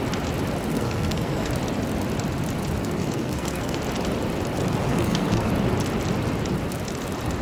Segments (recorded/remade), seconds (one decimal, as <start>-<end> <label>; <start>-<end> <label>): 0.0-0.7 recorded; 0.7-1.5 remade; 1.5-2.8 recorded; 2.8-3.8 remade; 3.8-4.8 recorded; 4.8-5.5 remade; 5.5-7.4 recorded